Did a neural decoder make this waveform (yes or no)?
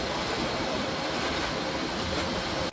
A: no